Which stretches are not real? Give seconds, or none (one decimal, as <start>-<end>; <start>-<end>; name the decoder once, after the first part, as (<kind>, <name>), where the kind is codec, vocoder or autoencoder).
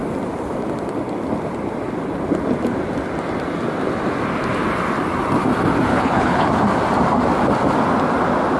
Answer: 5.9-6.5 (codec, HILCodec)